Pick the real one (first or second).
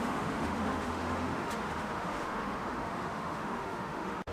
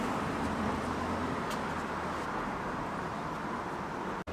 second